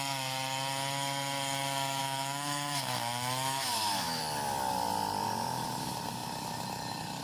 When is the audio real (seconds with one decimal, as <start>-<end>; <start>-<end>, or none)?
0.0-2.0; 4.2-7.2

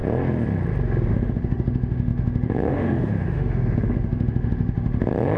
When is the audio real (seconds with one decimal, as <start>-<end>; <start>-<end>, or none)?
0.0-1.1

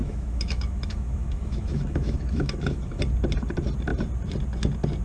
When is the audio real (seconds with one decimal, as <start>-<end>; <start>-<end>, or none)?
3.0-5.0

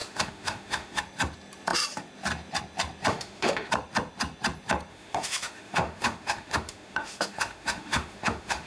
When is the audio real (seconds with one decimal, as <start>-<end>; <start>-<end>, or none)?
1.0-3.1; 3.7-4.9